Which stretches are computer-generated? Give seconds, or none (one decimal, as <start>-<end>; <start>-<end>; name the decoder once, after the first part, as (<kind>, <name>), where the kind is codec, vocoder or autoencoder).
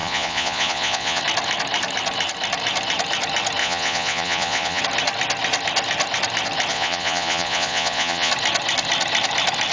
0.0-1.2 (vocoder, Vocos); 3.6-4.8; 6.7-8.3